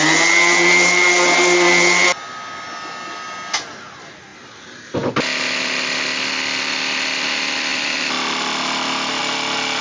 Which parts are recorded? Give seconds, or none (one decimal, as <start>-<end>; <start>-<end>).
0.0-9.8